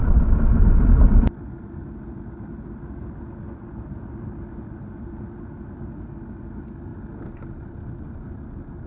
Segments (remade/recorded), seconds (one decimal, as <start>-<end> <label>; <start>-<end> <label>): 0.0-8.9 recorded